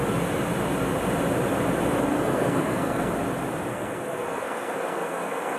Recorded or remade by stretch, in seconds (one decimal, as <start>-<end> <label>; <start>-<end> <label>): 0.0-2.1 recorded; 2.1-3.1 remade; 3.1-3.7 recorded; 3.7-5.6 remade